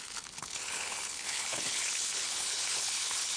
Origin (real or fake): fake